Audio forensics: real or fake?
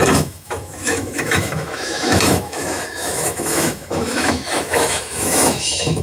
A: fake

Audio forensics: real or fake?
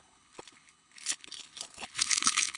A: fake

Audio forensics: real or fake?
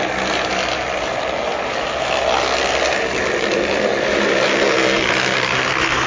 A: real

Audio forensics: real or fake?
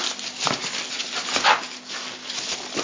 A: real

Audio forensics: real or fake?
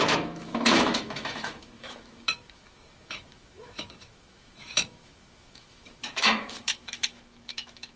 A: fake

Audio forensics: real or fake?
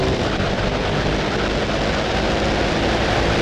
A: real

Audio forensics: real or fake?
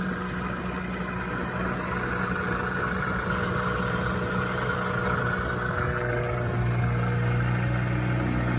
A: real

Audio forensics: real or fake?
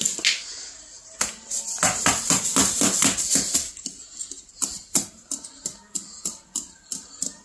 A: real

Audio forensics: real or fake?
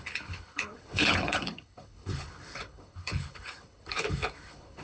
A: fake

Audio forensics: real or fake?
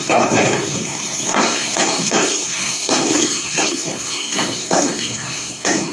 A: fake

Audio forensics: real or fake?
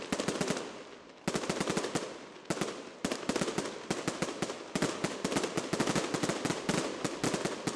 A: real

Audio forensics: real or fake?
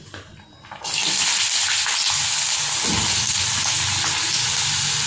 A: real